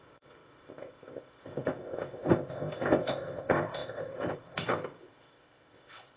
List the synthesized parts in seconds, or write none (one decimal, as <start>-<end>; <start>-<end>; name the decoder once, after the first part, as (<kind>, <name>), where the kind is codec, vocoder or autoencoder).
0.0-6.2 (codec, ZipCodec)